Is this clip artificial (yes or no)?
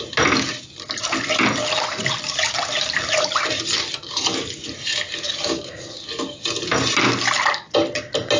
no